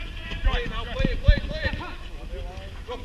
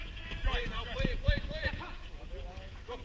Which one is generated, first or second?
second